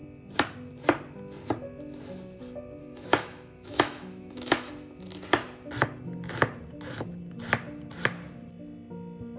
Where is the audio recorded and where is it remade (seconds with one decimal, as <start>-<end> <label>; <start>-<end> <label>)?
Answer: 0.0-2.8 recorded; 2.8-4.7 remade; 4.7-9.4 recorded